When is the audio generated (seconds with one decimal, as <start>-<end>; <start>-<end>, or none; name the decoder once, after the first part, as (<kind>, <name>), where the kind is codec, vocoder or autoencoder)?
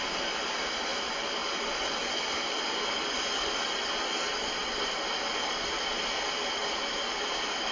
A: 0.9-1.8 (vocoder, BigVGAN v2); 6.6-7.2